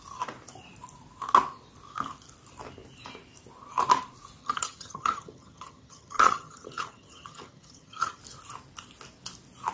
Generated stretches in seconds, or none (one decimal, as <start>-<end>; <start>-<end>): 4.4-8.2